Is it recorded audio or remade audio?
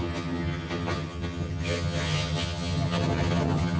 remade